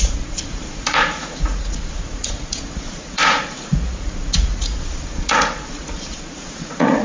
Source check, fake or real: fake